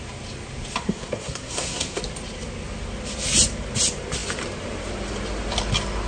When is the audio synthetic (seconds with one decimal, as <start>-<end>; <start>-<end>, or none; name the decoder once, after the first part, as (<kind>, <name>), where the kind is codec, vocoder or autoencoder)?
0.8-2.0 (codec, SNAC)